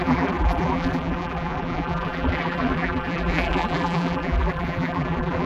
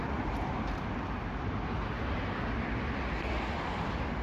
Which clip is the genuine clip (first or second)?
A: second